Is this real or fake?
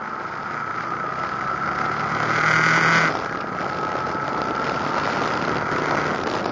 real